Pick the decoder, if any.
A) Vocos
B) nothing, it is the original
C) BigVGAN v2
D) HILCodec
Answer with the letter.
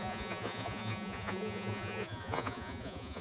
A